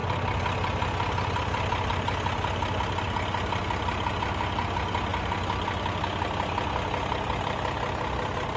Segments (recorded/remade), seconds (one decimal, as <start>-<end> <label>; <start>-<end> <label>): 0.0-8.6 recorded